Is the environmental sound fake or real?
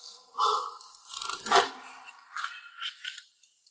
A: real